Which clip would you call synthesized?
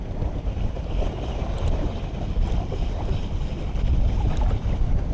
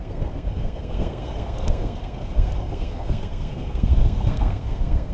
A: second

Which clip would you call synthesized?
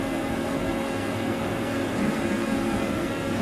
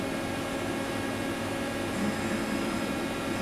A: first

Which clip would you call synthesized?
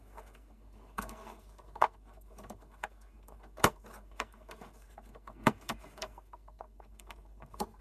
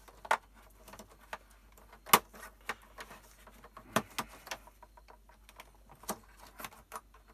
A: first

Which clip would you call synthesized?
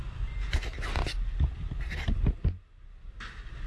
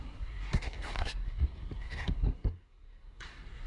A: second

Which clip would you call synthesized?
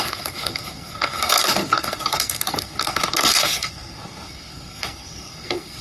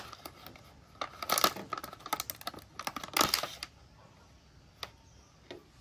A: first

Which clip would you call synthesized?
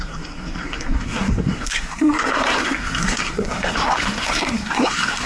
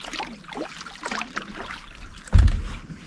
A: first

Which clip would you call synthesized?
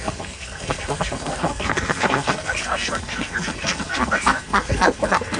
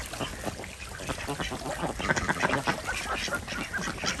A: first